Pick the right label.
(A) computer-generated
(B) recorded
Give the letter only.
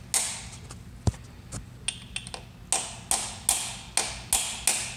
B